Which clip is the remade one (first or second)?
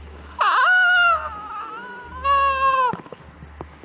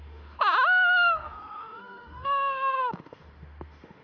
second